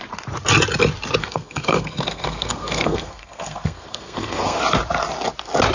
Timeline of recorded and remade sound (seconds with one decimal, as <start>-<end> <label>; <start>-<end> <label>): 0.0-1.2 recorded; 1.2-4.6 remade; 4.6-5.7 recorded